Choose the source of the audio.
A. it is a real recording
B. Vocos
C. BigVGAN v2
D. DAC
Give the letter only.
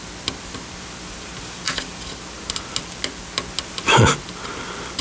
A